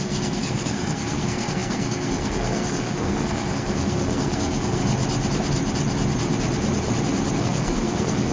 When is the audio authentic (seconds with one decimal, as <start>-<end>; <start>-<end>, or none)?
4.8-7.4